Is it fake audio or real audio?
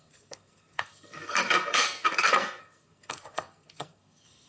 fake